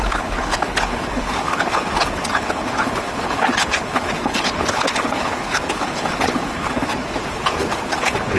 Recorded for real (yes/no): no